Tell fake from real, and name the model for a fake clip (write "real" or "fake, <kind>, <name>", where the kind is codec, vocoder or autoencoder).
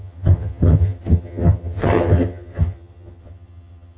fake, vocoder, HiFi-GAN